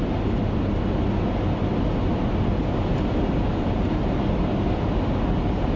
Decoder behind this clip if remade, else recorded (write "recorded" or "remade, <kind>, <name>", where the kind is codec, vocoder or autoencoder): recorded